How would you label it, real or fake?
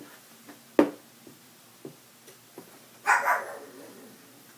real